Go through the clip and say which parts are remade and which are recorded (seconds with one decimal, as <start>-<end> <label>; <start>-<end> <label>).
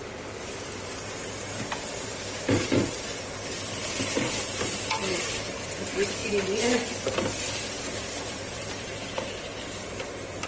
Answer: 0.0-6.2 remade; 6.2-6.9 recorded; 6.9-10.5 remade